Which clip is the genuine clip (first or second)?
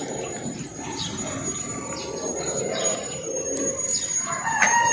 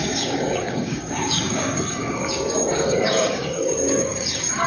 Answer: first